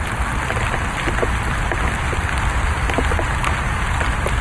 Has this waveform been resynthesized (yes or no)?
no